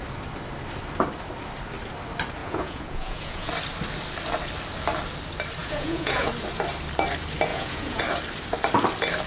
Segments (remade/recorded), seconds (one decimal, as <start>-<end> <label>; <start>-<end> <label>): 0.0-2.4 recorded; 2.4-3.5 remade; 3.5-5.6 recorded; 5.6-6.3 remade; 6.3-7.5 recorded; 7.5-8.0 remade; 8.0-9.3 recorded